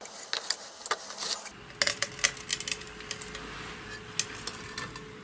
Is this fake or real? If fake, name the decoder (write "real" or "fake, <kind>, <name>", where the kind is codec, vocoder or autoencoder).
real